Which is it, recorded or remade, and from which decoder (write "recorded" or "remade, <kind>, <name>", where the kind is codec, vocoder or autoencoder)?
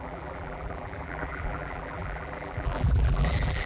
remade, vocoder, BigVGAN v2